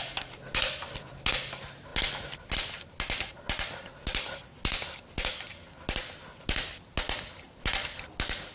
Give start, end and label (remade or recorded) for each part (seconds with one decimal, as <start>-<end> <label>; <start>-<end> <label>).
0.0-8.5 recorded

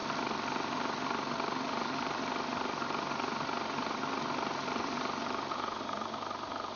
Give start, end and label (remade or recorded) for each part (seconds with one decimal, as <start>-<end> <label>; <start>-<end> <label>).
0.0-6.8 recorded

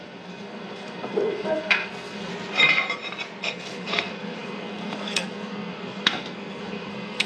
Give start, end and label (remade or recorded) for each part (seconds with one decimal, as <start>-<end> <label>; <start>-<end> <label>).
0.0-2.3 remade; 2.3-3.4 recorded; 3.4-7.3 remade

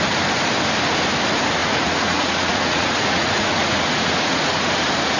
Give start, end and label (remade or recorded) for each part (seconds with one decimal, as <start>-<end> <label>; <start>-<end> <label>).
0.0-1.6 recorded; 1.6-4.7 remade; 4.7-5.2 recorded

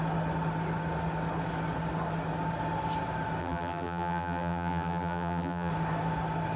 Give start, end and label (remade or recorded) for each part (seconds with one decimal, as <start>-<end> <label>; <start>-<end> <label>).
0.0-3.4 recorded; 3.4-5.7 remade; 5.7-6.6 recorded

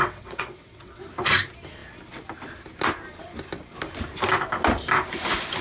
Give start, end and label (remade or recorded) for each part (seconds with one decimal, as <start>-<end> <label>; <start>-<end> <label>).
0.0-1.0 remade; 1.0-5.6 recorded

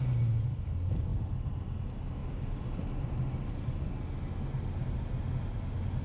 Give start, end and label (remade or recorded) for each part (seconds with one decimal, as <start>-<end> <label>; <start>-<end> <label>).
0.0-6.0 recorded

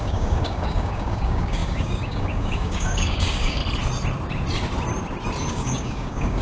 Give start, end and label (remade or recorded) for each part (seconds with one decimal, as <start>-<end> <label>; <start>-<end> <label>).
0.0-3.6 remade; 3.6-5.5 recorded; 5.5-6.4 remade